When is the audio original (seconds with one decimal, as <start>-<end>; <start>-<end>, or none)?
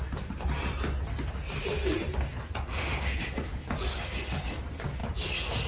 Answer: 0.0-2.7; 3.2-5.7